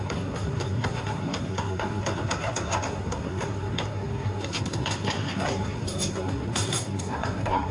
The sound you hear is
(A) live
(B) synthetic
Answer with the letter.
B